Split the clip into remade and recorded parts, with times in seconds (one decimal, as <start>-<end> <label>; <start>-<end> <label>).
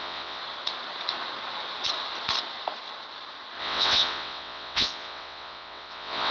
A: 0.0-0.4 remade; 0.4-3.6 recorded; 3.6-6.3 remade